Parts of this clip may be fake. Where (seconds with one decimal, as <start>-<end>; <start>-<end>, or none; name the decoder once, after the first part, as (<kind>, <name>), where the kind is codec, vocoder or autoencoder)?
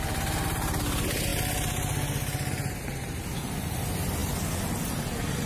none